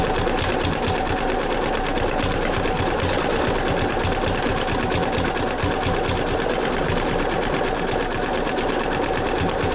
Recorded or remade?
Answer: recorded